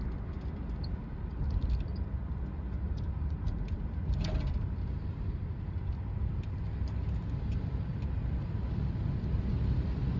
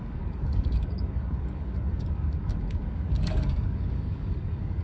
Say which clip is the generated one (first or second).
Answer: second